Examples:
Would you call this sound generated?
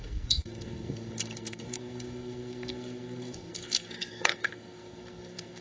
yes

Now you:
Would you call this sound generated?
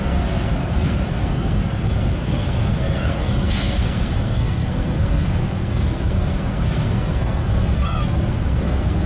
yes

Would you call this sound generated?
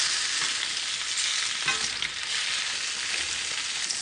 no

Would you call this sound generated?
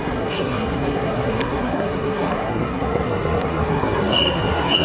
yes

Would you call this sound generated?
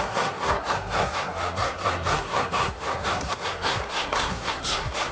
yes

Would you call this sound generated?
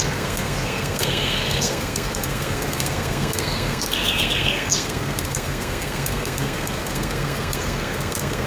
yes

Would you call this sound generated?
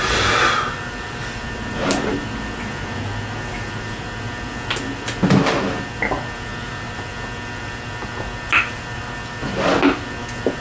no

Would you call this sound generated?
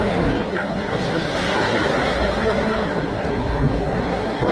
yes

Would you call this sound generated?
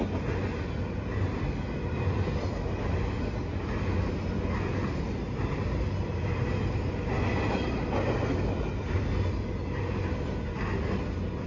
no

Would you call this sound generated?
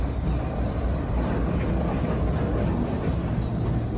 no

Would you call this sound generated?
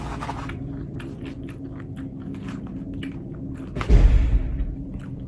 no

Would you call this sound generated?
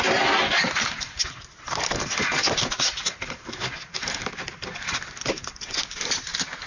no